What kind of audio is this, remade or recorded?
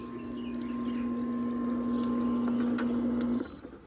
recorded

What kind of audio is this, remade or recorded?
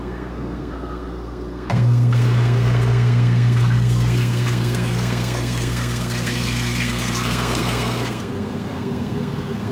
remade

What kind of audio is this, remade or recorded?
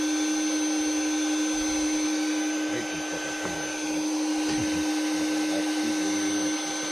recorded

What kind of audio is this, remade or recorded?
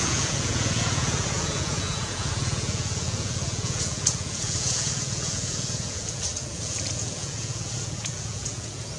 remade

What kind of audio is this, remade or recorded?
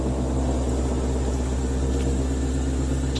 recorded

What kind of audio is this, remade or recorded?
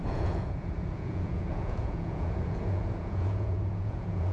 remade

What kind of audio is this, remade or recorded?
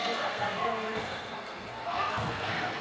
remade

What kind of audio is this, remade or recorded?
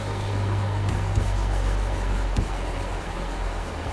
remade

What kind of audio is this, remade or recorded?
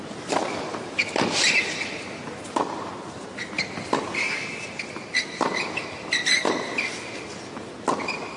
recorded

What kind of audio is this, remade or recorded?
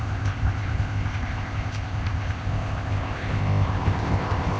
remade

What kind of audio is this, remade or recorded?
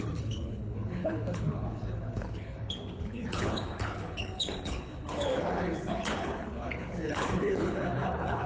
remade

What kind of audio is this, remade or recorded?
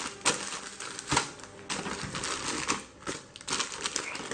recorded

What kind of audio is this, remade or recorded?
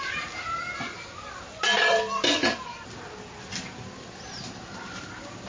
recorded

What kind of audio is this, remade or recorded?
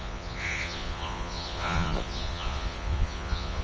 remade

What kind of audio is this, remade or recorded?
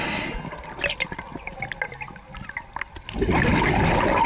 recorded